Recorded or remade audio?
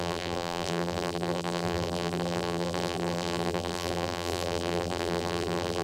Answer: remade